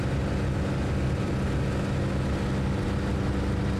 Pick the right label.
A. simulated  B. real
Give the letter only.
B